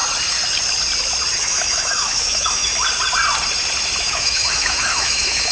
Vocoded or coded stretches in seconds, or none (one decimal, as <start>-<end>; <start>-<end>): 1.4-2.7; 4.0-5.5